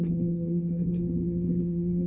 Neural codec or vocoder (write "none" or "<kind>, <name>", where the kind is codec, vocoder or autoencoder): codec, SNAC